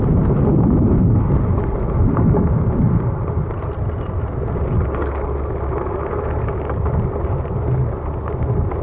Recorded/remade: recorded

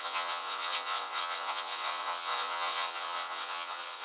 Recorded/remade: remade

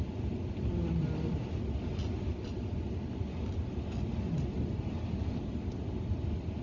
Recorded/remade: remade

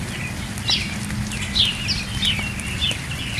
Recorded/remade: recorded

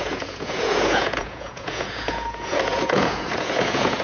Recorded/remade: remade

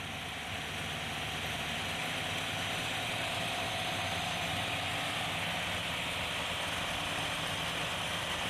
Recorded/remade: recorded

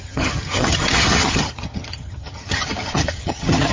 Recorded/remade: remade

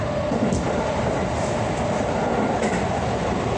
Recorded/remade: recorded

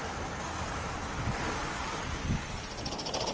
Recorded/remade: recorded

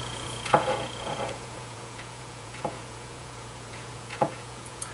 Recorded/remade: remade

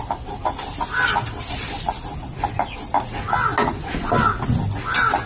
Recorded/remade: recorded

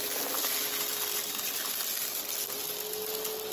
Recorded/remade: recorded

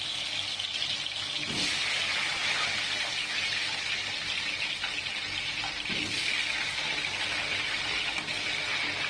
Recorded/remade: recorded